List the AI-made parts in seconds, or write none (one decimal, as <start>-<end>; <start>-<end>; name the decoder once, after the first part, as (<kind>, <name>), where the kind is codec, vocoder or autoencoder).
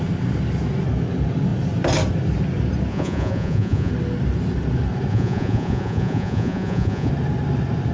2.9-3.9 (vocoder, Vocos); 5.1-7.1